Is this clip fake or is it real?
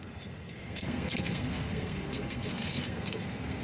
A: fake